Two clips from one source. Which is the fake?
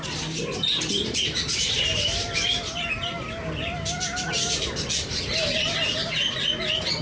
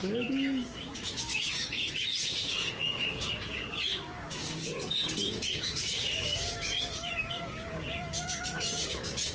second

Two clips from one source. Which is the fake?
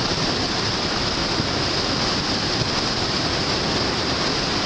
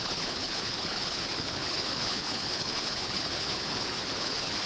second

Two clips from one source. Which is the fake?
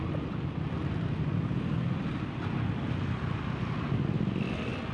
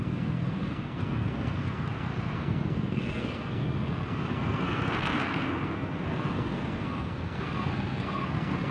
second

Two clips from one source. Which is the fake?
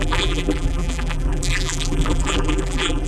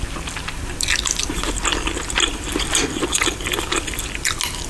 first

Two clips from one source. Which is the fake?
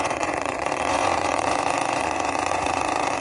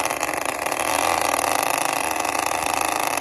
first